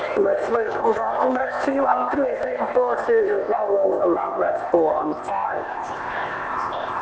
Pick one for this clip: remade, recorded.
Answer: remade